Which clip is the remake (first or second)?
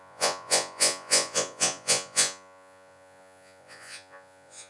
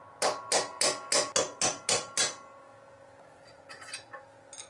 first